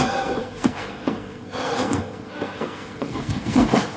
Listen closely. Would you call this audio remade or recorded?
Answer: remade